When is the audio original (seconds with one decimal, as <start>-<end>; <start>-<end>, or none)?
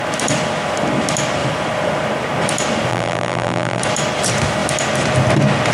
0.0-2.9; 3.8-5.7